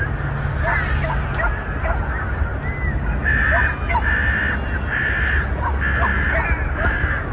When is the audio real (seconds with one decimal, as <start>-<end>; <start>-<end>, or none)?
0.0-7.3